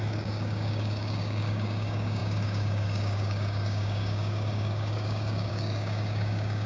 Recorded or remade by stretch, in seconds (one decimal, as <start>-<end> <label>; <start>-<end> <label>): 0.0-6.7 remade

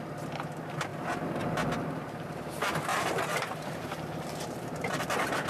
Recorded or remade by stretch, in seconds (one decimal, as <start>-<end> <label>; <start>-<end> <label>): 0.0-0.9 recorded; 0.9-1.7 remade; 1.7-2.9 recorded; 2.9-5.5 remade